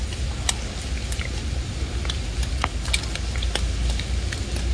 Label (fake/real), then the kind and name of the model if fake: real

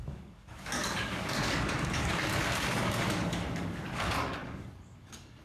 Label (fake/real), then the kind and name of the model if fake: fake, codec, DAC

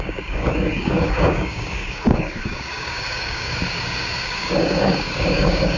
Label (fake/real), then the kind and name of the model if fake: fake, codec, DAC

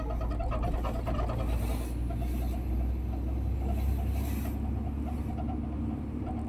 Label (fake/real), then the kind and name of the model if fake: real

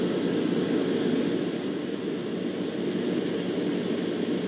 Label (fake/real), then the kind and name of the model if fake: real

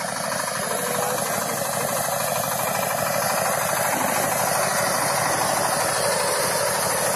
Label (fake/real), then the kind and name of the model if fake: real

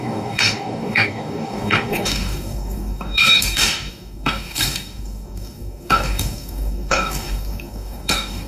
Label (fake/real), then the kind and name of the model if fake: fake, codec, DAC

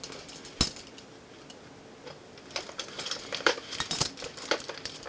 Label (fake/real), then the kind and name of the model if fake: real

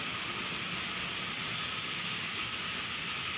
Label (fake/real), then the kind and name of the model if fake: real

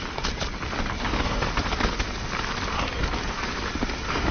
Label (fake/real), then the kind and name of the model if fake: real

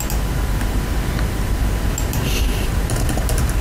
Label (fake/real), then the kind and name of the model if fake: real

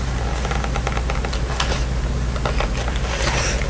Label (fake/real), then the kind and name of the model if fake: real